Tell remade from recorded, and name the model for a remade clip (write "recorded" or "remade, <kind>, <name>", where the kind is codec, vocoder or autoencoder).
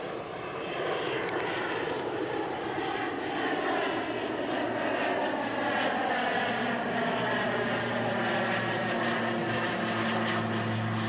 recorded